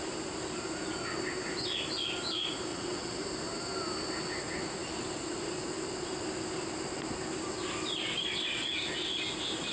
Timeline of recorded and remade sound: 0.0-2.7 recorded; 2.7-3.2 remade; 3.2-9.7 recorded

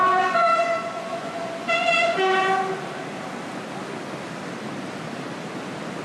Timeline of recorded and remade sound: 0.0-2.3 remade; 2.3-6.0 recorded

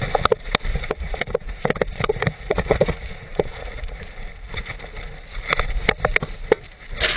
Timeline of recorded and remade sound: 0.0-0.7 recorded; 0.7-4.1 remade; 4.1-7.2 recorded

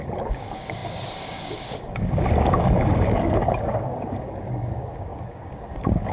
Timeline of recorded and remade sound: 0.0-6.1 remade

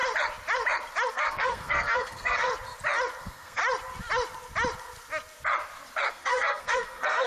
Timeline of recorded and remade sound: 0.0-1.1 recorded; 1.1-2.5 remade; 2.5-3.2 recorded; 3.2-3.6 remade; 3.6-6.1 recorded; 6.1-7.3 remade